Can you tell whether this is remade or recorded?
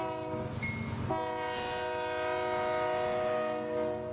recorded